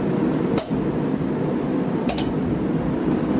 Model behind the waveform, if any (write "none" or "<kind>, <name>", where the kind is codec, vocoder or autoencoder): none